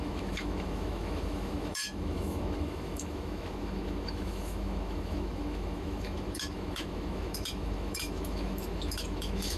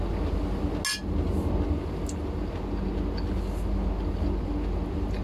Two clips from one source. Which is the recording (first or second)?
second